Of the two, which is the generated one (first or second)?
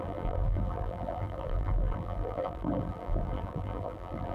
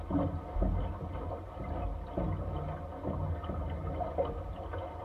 first